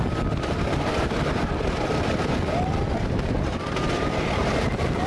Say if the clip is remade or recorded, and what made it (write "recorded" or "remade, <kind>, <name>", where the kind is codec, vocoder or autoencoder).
recorded